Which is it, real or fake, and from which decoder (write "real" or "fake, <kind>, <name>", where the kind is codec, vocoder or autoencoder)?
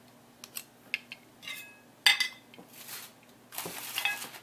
real